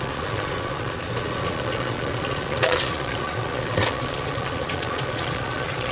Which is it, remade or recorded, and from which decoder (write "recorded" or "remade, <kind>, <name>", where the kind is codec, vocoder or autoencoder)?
remade, vocoder, Vocos